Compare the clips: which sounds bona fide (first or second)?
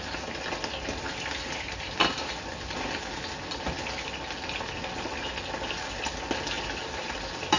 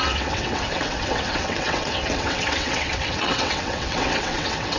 first